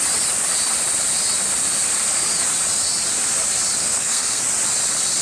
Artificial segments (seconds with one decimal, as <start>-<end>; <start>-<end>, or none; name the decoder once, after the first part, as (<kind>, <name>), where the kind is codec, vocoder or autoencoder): 3.8-4.4 (codec, SNAC)